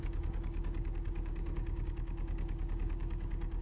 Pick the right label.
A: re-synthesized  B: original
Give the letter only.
A